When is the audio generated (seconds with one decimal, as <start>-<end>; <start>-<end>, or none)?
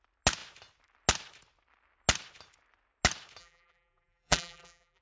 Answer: 3.4-5.0